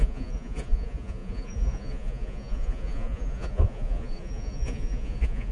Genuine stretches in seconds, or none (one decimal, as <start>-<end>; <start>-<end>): none